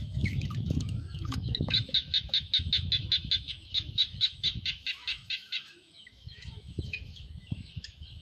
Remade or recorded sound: remade